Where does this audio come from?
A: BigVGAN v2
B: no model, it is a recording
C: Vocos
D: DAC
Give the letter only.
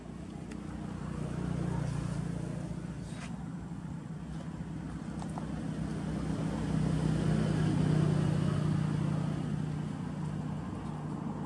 B